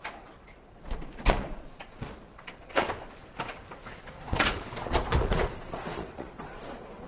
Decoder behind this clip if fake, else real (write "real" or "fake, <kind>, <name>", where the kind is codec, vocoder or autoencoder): fake, vocoder, Vocos